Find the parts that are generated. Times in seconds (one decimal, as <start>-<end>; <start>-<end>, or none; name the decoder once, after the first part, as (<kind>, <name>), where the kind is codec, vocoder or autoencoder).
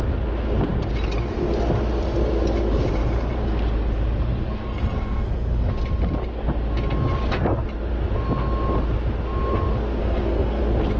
4.6-5.7 (codec, SNAC); 10.0-10.6